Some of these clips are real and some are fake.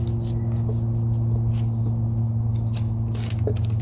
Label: real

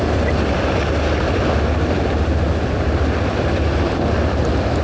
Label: real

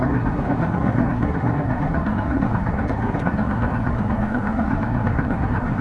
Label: fake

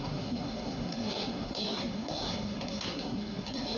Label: fake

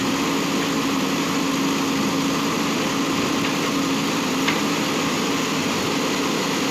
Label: real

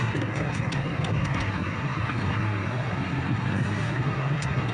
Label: fake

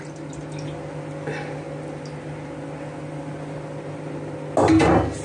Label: real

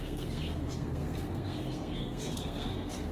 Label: fake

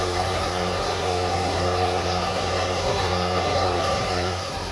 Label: fake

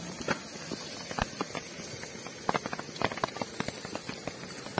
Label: real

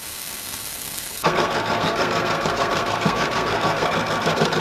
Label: fake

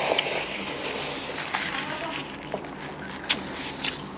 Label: real